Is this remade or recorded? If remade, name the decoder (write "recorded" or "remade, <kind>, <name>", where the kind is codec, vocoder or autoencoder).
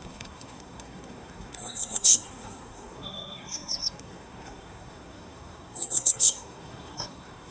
remade, codec, SNAC